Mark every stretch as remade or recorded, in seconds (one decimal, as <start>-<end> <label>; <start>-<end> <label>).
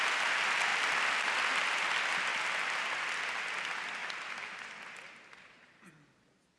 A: 0.0-0.7 recorded; 0.7-1.8 remade; 1.8-6.6 recorded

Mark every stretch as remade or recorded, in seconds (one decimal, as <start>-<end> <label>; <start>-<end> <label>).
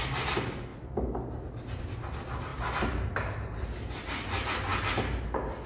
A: 0.0-5.7 recorded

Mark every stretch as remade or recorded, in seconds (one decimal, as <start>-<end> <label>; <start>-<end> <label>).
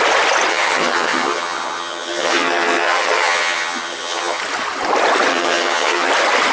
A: 0.0-0.5 recorded; 0.5-4.4 remade; 4.4-5.3 recorded; 5.3-6.1 remade; 6.1-6.5 recorded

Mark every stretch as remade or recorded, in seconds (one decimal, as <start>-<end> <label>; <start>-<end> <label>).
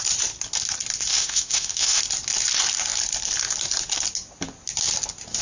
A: 0.0-1.1 recorded; 1.1-2.0 remade; 2.0-5.4 recorded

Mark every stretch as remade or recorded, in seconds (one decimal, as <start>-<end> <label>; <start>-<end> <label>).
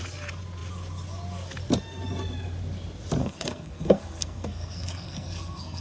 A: 0.0-3.2 recorded; 3.2-5.8 remade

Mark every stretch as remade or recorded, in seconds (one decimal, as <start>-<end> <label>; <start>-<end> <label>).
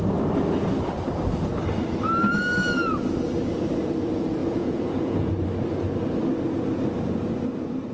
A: 0.0-4.4 recorded; 4.4-5.3 remade; 5.3-7.9 recorded